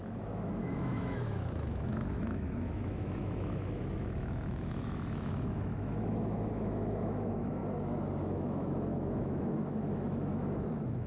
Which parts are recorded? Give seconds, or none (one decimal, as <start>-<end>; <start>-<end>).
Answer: 7.6-8.2